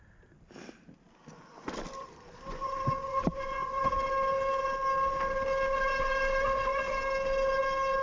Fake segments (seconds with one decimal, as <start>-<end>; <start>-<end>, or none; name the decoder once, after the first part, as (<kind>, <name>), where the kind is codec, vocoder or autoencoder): 2.0-3.9 (vocoder, Vocos)

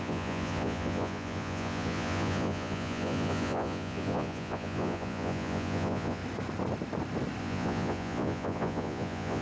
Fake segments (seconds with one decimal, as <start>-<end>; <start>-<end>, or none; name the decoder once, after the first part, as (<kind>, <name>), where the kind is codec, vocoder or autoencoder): 0.0-6.2 (vocoder, Vocos); 7.4-9.4

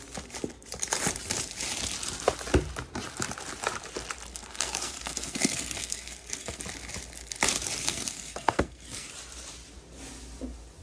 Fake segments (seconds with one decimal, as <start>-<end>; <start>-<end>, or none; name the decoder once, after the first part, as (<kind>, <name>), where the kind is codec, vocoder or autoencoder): 4.3-6.6 (codec, SNAC); 7.8-9.1

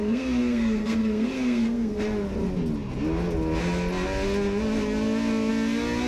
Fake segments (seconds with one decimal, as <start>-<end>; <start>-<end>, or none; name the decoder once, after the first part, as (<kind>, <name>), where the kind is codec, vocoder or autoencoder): 0.0-2.0 (codec, SNAC)